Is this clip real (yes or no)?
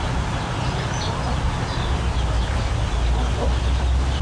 yes